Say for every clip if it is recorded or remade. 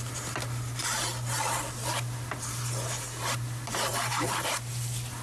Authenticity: recorded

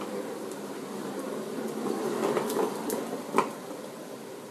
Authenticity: recorded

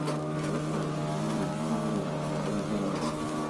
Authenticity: recorded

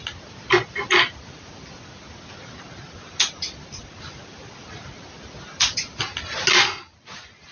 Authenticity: recorded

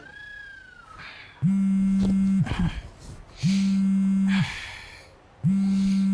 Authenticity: recorded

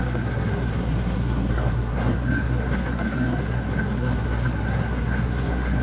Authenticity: remade